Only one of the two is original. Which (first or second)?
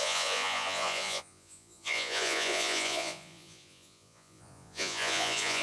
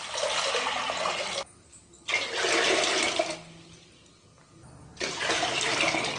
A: second